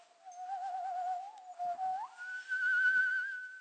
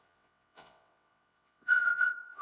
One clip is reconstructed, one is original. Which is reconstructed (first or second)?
second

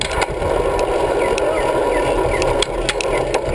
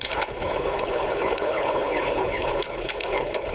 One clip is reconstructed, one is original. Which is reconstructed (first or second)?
second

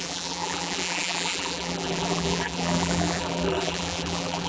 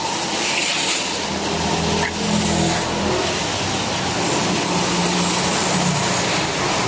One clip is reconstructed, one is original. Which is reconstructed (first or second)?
first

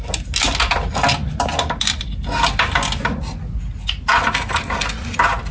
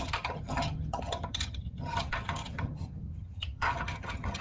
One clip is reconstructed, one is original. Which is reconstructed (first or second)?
second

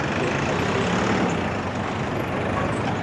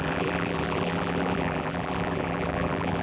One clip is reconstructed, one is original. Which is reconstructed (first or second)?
second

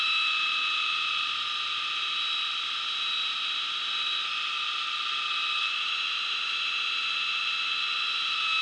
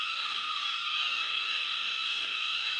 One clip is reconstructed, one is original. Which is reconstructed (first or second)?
second